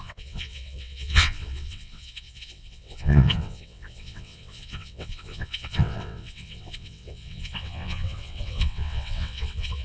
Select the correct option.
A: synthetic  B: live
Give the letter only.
A